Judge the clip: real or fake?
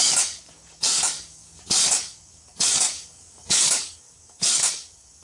fake